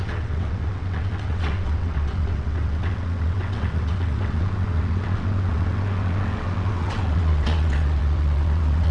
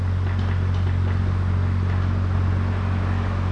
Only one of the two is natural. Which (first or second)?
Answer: second